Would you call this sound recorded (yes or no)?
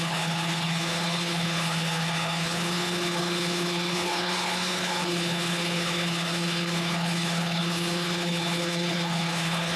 no